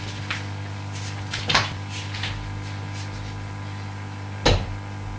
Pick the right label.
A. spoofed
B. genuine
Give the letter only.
A